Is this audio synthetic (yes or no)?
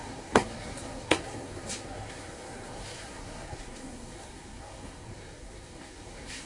yes